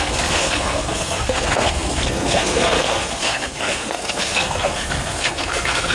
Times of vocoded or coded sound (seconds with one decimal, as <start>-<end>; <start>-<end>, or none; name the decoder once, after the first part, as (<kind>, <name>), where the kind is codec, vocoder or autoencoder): 0.0-5.9 (codec, SNAC)